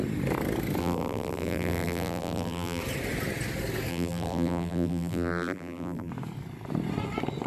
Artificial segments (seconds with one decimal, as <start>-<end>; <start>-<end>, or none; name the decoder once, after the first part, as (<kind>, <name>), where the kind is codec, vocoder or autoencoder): 0.8-2.8 (vocoder, BigVGAN v2); 3.9-6.1